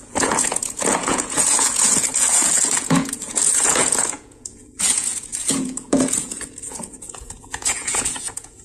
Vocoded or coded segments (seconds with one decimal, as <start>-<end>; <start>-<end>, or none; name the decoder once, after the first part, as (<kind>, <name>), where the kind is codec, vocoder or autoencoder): 0.0-8.6 (vocoder, Vocos)